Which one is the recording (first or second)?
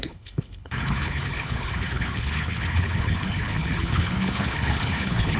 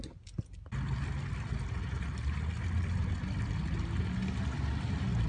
second